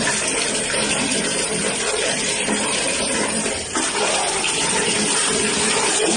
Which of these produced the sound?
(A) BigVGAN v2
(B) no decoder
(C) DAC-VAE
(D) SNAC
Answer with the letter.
A